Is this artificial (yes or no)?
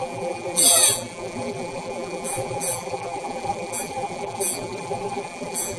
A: yes